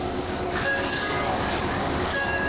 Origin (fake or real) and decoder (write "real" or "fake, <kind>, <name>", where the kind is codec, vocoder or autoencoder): fake, codec, DAC